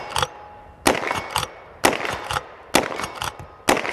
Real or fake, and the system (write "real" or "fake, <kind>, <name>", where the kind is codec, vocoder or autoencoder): real